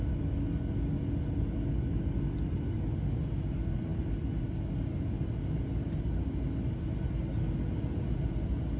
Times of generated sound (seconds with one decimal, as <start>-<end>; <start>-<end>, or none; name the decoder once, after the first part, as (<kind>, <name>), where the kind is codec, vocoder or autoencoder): none